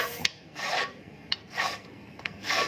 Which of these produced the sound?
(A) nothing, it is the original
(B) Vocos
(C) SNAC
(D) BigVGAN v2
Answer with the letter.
C